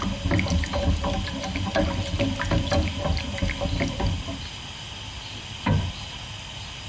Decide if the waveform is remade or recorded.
recorded